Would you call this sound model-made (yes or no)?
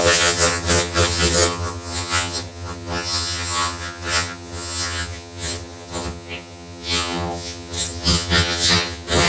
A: yes